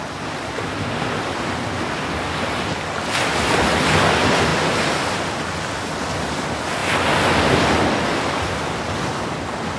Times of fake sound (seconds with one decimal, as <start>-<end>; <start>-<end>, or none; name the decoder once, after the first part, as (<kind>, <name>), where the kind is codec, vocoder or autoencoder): none